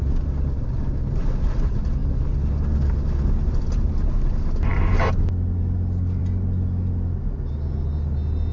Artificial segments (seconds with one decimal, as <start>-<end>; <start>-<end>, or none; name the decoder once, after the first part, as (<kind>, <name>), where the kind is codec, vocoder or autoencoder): none